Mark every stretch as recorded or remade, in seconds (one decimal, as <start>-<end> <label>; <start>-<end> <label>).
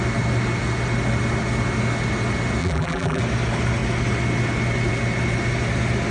0.0-2.6 recorded; 2.6-3.2 remade; 3.2-6.1 recorded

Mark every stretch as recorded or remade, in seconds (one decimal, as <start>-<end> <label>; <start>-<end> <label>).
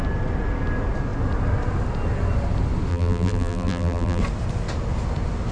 0.0-2.9 recorded; 2.9-4.2 remade; 4.2-5.5 recorded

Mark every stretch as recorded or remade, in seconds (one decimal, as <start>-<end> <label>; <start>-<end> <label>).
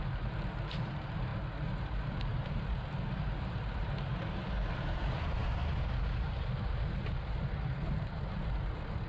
0.0-1.3 remade; 1.3-1.8 recorded; 1.8-5.6 remade; 5.6-6.2 recorded; 6.2-9.1 remade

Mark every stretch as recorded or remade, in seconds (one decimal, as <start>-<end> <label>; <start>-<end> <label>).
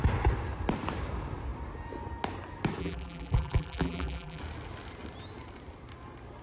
0.0-2.8 recorded; 2.8-4.4 remade; 4.4-6.4 recorded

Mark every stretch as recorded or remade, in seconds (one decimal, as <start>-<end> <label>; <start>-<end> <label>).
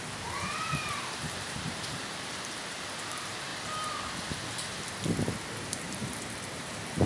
0.0-3.5 remade; 3.5-5.6 recorded; 5.6-7.1 remade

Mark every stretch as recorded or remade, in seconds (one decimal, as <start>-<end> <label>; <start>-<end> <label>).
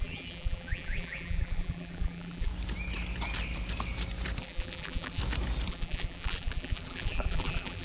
0.0-2.5 remade; 2.5-4.4 recorded; 4.4-5.2 remade; 5.2-5.7 recorded; 5.7-7.8 remade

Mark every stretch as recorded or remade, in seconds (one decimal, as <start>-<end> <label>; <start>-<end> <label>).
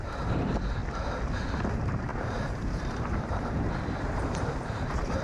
0.0-0.8 remade; 0.8-1.7 recorded; 1.7-5.2 remade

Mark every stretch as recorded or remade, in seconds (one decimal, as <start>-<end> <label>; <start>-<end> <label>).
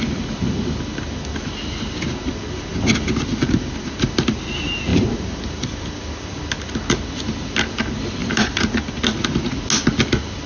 0.0-4.9 recorded; 4.9-6.4 remade; 6.4-8.2 recorded; 8.2-8.8 remade; 8.8-10.5 recorded